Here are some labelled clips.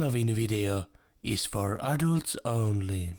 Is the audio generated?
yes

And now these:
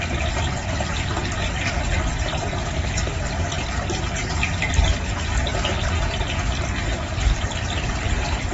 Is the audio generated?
no